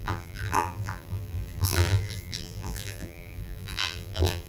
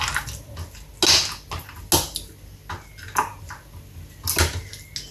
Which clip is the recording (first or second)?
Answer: second